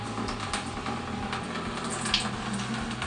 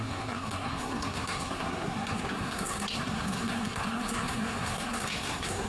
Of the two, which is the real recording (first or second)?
first